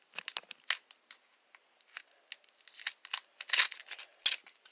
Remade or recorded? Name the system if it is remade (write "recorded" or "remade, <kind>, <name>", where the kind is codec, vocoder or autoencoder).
recorded